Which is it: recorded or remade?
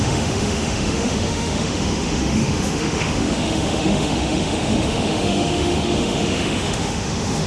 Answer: remade